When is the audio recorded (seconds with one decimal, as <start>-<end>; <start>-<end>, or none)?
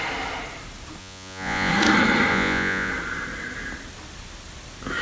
0.0-1.0; 1.7-2.3; 2.9-5.0